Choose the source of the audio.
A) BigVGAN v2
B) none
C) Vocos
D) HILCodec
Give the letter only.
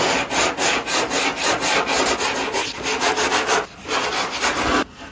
B